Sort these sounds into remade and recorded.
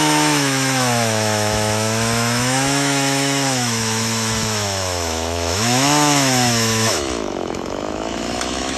remade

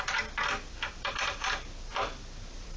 remade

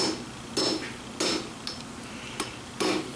recorded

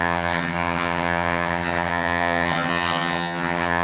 remade